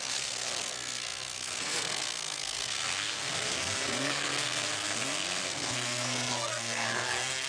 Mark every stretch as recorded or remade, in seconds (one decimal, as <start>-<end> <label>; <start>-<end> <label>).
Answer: 0.0-7.5 remade